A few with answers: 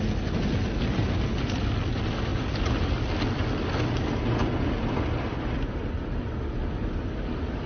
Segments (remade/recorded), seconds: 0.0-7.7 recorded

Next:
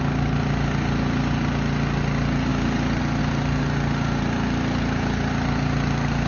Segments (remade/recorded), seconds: 0.0-6.3 recorded